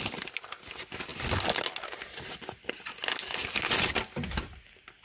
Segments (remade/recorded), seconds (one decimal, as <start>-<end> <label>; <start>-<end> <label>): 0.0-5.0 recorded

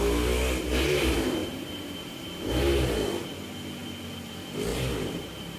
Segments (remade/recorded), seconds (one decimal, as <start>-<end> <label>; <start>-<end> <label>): 0.0-1.4 recorded; 1.4-2.5 remade; 2.5-4.7 recorded; 4.7-5.6 remade

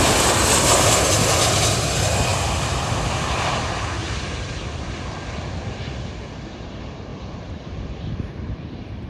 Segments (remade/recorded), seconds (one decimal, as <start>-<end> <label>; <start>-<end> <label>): 0.0-4.0 recorded; 4.0-4.8 remade; 4.8-7.1 recorded; 7.1-9.1 remade